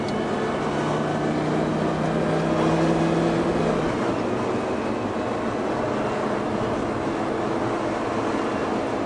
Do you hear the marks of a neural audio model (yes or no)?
no